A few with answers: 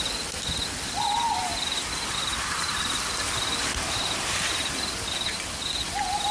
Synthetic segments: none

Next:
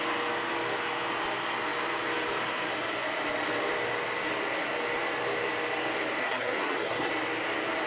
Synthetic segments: 6.2-7.1 (codec, SNAC)

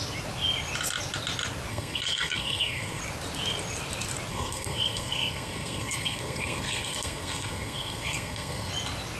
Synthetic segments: 1.7-3.0 (codec, SNAC); 4.3-8.7

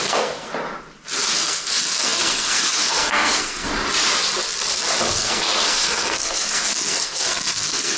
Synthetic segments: 0.0-0.5 (codec, SNAC); 1.3-3.7; 5.0-8.0

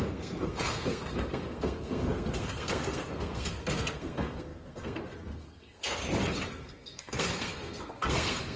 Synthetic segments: 0.0-6.0 (codec, SNAC); 6.5-8.6

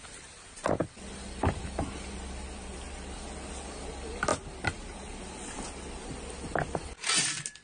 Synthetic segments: none

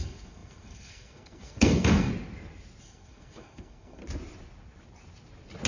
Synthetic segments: 0.0-2.1 (codec, SNAC); 2.8-4.0

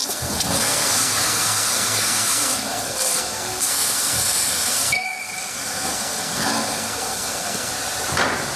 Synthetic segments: 0.0-7.7 (codec, SNAC)